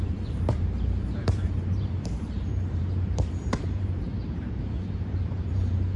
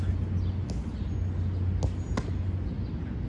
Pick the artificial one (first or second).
first